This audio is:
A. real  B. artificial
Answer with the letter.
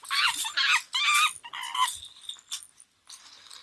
A